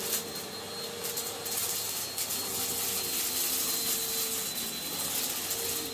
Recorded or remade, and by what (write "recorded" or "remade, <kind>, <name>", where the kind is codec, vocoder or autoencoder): recorded